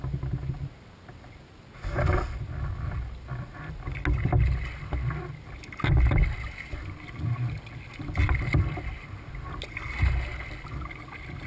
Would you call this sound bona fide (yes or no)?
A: yes